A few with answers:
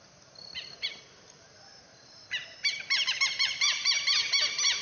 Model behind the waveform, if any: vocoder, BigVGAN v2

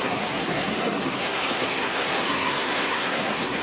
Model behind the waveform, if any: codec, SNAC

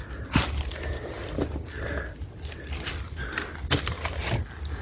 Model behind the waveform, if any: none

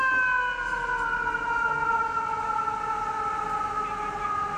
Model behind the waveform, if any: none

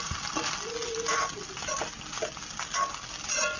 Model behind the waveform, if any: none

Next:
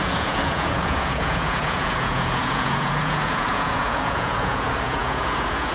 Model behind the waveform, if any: vocoder, Vocos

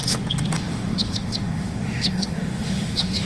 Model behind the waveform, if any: autoencoder, DAC-VAE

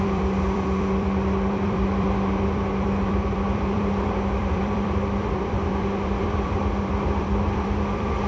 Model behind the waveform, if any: vocoder, BigVGAN v2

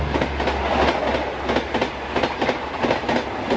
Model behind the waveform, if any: none